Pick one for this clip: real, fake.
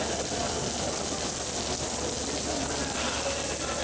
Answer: real